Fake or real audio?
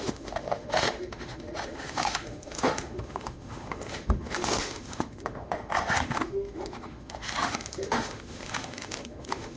fake